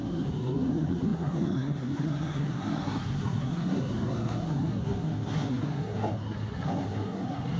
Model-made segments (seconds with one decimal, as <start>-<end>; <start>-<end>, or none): 0.0-7.6